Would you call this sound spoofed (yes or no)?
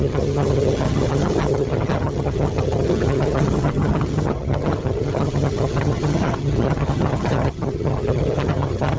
yes